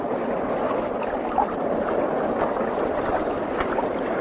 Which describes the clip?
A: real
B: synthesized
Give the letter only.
A